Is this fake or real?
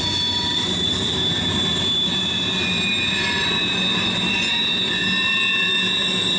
real